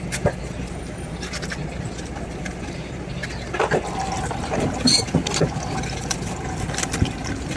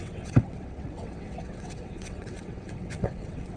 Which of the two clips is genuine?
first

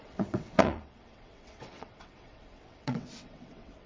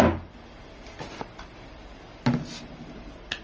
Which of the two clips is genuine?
second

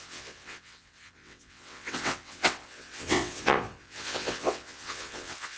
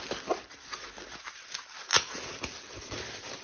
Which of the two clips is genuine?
second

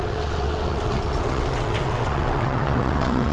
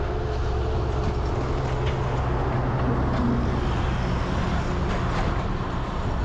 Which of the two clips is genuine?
second